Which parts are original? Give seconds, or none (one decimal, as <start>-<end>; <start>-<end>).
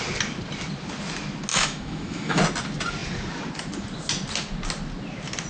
0.0-1.5; 2.4-5.5